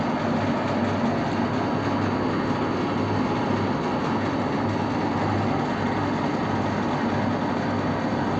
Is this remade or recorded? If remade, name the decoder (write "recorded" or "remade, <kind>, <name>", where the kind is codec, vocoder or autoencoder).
recorded